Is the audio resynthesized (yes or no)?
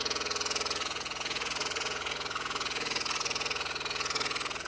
yes